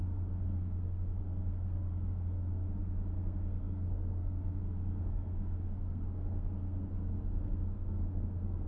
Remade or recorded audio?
remade